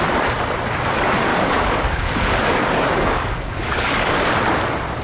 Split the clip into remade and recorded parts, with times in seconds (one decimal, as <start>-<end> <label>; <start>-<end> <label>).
0.0-1.3 recorded; 1.3-4.3 remade; 4.3-5.0 recorded